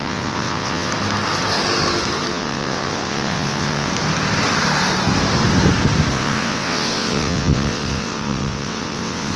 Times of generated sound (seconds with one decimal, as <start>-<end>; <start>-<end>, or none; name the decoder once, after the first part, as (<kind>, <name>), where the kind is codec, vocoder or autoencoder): 0.0-0.9 (vocoder, WaveNeXt); 2.3-3.9; 6.1-9.4